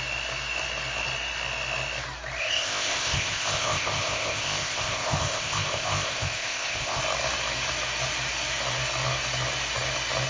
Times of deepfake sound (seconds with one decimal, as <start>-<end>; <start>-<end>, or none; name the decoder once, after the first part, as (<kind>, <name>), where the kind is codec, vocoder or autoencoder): 2.4-7.0 (codec, ZipCodec)